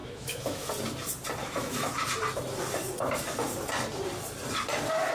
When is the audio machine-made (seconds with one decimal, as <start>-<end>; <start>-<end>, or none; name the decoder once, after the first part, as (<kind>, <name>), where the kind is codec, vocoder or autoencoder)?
0.0-0.7 (autoencoder, DAC-VAE); 1.4-1.9